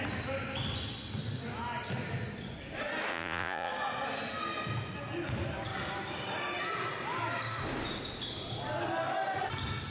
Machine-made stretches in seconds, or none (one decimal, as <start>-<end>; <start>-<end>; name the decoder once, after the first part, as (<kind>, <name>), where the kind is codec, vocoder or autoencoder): 3.1-3.7 (vocoder, Vocos)